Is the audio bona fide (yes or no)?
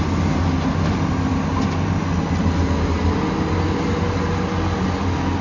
yes